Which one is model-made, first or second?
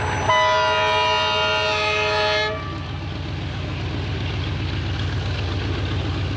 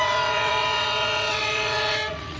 second